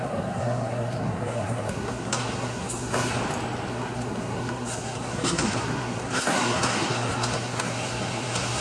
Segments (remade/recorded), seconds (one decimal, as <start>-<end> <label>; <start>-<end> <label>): 0.0-3.2 remade; 3.2-3.7 recorded; 3.7-8.6 remade